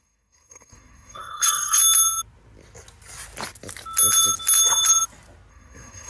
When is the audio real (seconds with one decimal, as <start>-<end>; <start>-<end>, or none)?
1.8-5.5